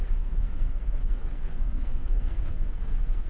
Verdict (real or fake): fake